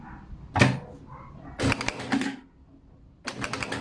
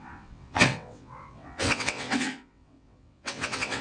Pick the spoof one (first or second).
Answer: second